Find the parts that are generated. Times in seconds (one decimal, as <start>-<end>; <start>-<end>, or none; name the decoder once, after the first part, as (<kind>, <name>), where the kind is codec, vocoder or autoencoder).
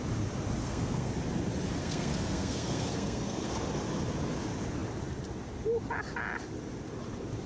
0.6-1.1 (codec, SNAC); 1.8-3.5